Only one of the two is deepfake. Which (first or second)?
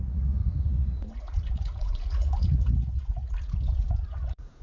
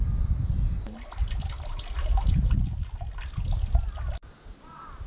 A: first